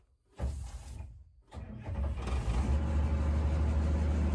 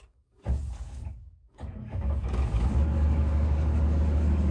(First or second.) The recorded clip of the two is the first